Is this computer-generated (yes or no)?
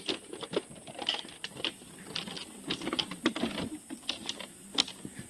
no